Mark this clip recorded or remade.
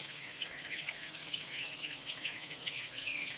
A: remade